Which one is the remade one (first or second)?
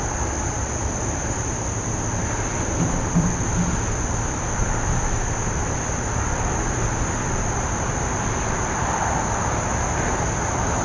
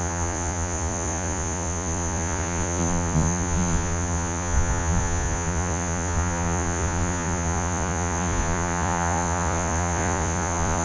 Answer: second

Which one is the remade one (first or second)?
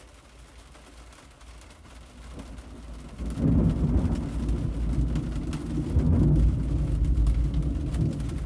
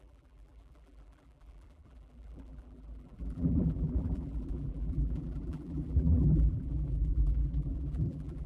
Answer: second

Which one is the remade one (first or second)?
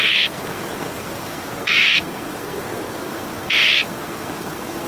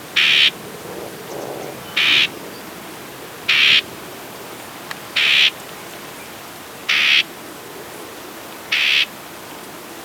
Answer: first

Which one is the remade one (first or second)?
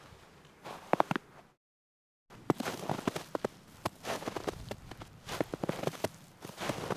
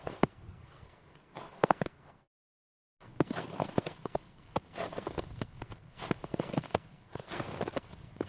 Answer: second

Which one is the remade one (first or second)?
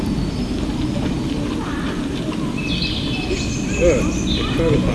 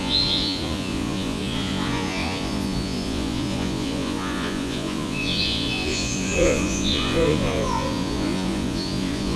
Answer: second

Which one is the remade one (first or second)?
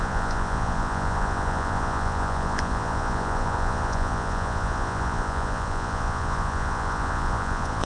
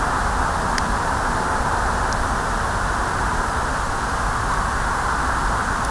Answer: first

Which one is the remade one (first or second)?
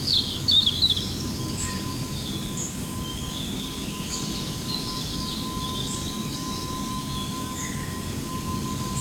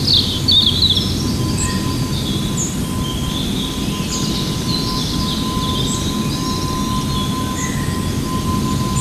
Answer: first